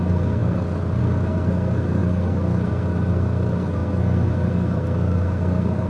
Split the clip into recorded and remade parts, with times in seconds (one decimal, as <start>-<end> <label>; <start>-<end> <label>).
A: 0.0-5.9 remade